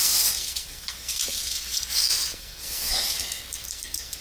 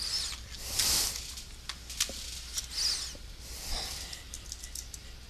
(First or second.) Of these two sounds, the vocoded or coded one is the first